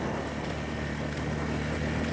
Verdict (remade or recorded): recorded